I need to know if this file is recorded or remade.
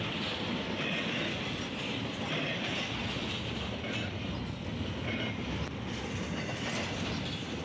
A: recorded